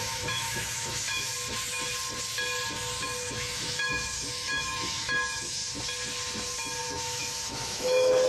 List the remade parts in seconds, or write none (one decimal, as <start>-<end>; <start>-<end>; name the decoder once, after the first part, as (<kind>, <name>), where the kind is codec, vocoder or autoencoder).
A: 0.0-1.3 (autoencoder, DAC-VAE); 3.3-5.6; 6.8-8.3